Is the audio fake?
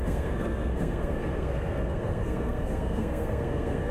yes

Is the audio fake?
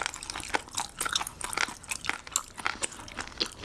no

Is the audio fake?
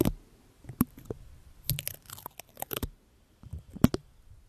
no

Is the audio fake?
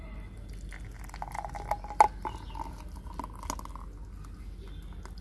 no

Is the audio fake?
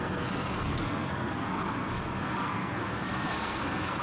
yes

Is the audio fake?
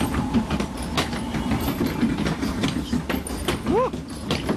no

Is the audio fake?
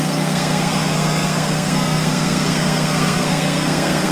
yes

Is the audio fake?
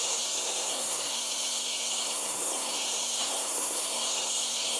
yes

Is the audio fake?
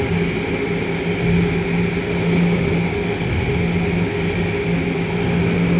no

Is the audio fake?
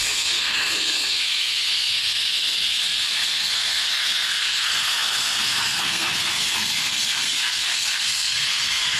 yes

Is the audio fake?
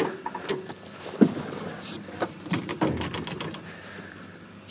no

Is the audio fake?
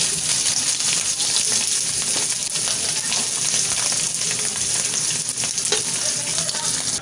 no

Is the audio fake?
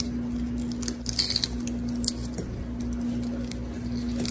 no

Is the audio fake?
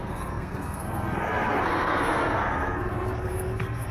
yes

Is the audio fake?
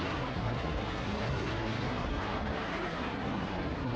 yes